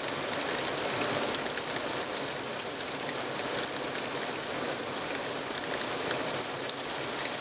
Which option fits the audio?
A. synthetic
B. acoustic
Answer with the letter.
B